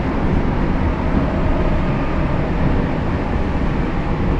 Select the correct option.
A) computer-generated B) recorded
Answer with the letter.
B